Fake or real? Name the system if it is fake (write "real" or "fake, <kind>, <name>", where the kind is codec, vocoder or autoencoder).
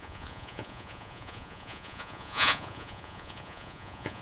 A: fake, vocoder, Vocos